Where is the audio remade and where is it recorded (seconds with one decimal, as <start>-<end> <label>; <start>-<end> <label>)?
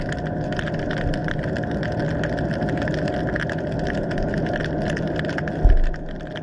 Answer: 0.0-6.4 recorded